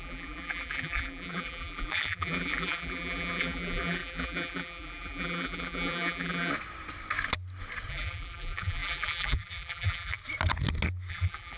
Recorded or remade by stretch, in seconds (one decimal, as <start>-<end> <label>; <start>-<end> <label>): 0.0-6.5 remade; 6.5-7.9 recorded; 7.9-10.2 remade; 10.2-11.1 recorded; 11.1-11.6 remade